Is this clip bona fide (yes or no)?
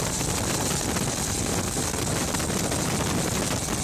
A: yes